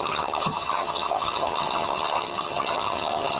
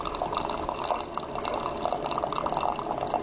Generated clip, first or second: first